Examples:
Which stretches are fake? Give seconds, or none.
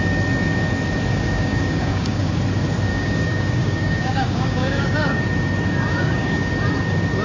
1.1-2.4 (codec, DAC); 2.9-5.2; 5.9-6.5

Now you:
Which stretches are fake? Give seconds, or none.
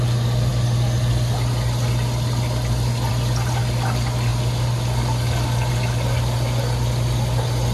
none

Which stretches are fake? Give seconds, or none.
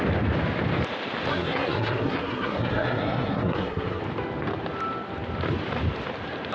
1.3-4.0 (codec, SNAC)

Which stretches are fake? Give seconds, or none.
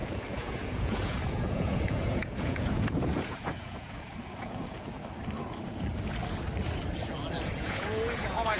0.0-5.0 (vocoder, Vocos); 7.4-8.6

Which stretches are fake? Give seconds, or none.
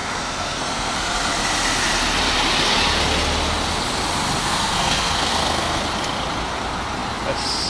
0.0-1.1 (codec, SNAC); 4.4-5.8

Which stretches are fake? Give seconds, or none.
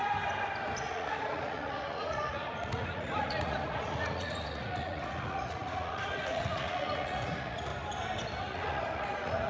0.8-7.7 (vocoder, Vocos); 8.4-9.5